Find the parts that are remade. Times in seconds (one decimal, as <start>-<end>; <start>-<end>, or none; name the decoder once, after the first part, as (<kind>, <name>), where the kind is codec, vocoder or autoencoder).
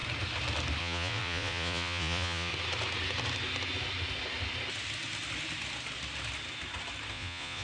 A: 0.8-2.5 (vocoder, Vocos); 7.1-7.6